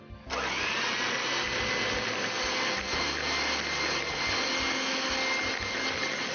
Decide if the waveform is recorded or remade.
recorded